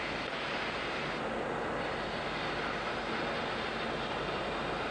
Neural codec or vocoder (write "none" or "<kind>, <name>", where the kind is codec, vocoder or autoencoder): none